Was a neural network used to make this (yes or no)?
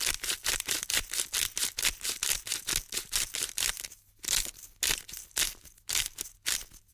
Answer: no